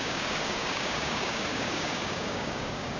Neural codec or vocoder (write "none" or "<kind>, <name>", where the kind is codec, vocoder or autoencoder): codec, DAC